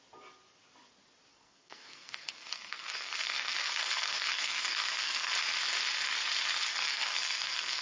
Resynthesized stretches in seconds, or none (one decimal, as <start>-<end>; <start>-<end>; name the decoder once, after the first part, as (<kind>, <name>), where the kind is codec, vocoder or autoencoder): 1.3-5.3 (codec, SNAC); 6.7-7.8